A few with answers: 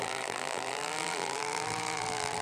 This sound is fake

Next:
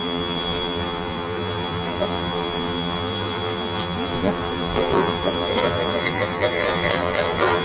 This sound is fake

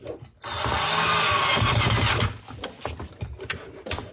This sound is real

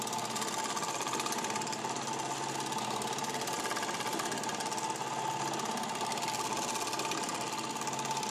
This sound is real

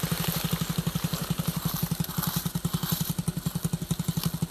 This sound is real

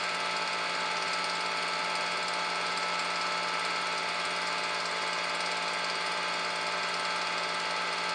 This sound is real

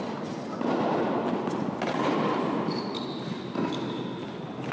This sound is real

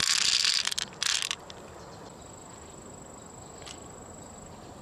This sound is real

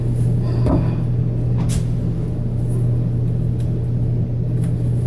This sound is real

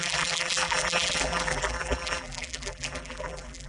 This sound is fake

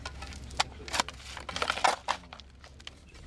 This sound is real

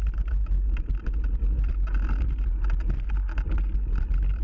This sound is real